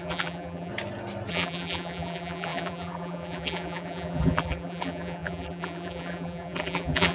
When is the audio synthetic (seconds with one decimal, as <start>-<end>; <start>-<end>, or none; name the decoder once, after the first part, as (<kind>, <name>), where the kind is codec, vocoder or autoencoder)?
0.0-0.7 (vocoder, BigVGAN v2); 1.3-7.1